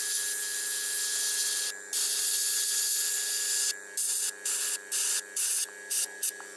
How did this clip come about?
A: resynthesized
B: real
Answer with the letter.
B